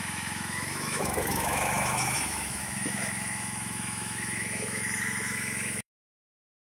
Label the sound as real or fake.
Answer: fake